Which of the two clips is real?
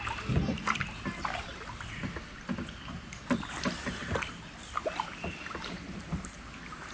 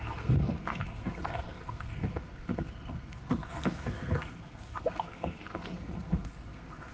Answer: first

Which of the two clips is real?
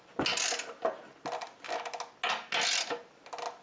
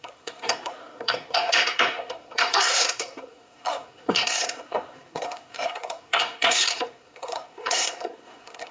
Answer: first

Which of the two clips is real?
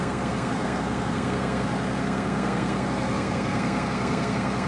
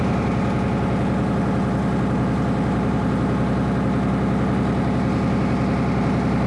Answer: second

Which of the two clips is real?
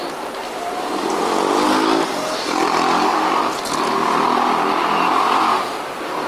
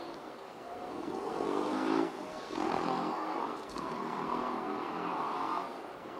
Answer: first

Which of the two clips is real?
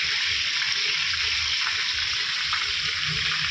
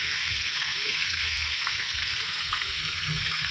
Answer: first